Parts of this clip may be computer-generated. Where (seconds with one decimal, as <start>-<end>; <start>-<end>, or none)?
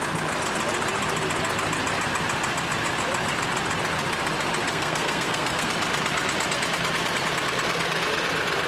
4.7-5.7